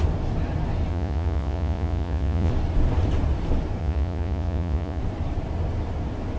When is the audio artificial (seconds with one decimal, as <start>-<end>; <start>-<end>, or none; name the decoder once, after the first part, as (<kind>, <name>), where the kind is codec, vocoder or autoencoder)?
0.9-2.5 (vocoder, Vocos); 3.8-5.0